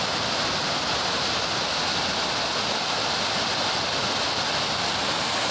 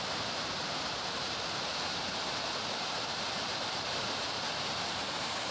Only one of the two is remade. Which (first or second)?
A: second